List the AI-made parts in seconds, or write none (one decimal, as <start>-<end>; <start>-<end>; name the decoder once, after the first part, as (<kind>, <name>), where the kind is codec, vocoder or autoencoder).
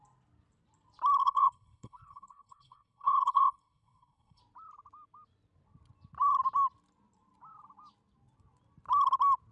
1.2-4.4 (codec, HILCodec)